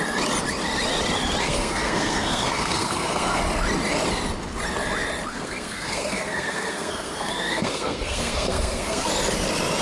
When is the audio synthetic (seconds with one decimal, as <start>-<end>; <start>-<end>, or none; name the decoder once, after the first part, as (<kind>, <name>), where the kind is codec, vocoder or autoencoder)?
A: 1.4-3.4 (codec, SNAC); 5.3-9.1